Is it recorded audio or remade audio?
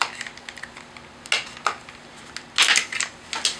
recorded